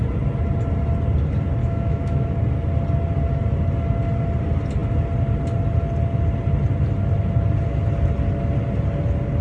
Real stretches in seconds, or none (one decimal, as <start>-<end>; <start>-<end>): 0.0-1.6; 2.4-9.4